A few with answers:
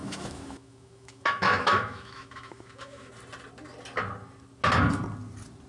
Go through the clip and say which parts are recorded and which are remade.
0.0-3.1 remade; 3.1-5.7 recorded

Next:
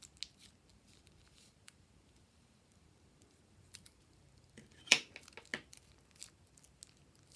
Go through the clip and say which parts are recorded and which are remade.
0.0-0.7 recorded; 0.7-5.1 remade; 5.1-7.4 recorded

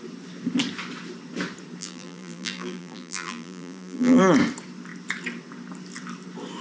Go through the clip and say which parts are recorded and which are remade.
0.0-1.8 recorded; 1.8-4.2 remade; 4.2-6.6 recorded

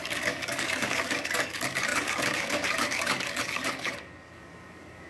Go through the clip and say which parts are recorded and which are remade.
0.0-5.1 remade

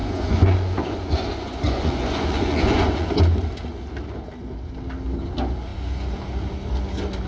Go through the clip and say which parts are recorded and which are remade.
0.0-3.2 remade; 3.2-7.3 recorded